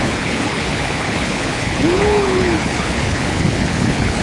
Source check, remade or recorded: remade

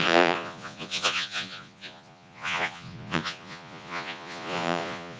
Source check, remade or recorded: remade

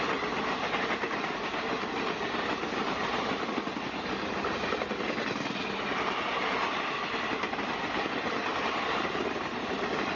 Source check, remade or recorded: recorded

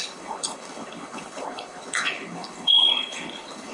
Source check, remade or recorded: remade